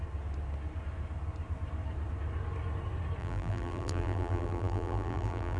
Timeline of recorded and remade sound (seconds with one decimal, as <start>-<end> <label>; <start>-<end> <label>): 0.0-3.2 recorded; 3.2-5.6 remade